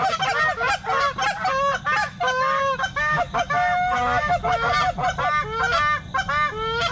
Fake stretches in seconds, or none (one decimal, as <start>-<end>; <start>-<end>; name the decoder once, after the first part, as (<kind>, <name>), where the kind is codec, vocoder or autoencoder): 2.0-4.7 (autoencoder, DAC-VAE)